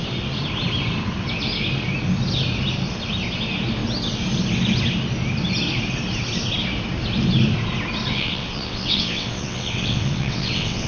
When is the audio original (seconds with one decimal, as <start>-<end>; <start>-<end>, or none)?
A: 0.0-8.1